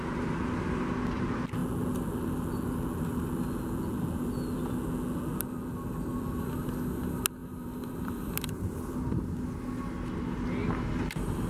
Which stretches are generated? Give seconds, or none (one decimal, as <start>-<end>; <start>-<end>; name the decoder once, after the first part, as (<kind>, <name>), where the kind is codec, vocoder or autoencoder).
7.4-9.4 (vocoder, BigVGAN v2)